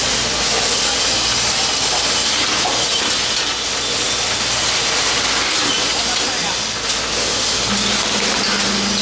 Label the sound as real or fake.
real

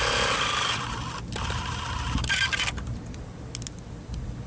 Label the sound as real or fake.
real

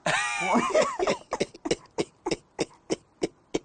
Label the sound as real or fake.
real